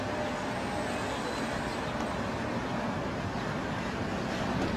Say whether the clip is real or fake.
real